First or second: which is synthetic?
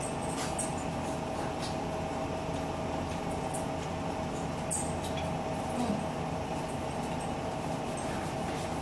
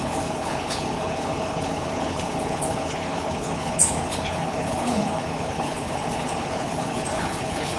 second